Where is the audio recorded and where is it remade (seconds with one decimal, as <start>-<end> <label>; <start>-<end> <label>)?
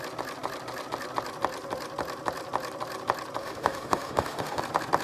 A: 0.0-3.4 recorded; 3.4-4.6 remade; 4.6-5.0 recorded